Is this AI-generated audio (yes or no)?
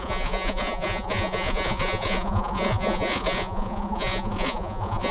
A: yes